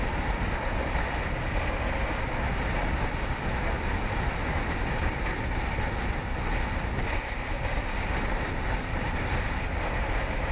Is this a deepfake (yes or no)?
no